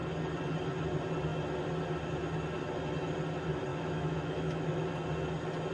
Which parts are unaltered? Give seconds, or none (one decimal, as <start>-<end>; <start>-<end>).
0.0-3.7; 4.9-5.7